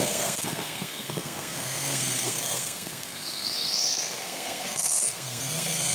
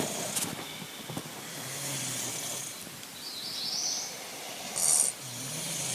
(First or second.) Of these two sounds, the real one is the second